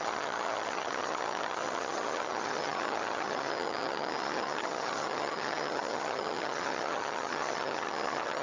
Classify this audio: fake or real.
fake